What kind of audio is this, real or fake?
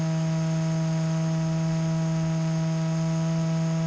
real